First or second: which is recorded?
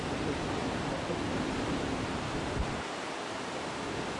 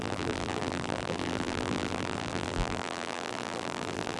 first